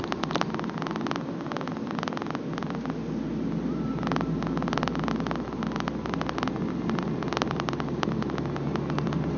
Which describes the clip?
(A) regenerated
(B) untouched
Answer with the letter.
B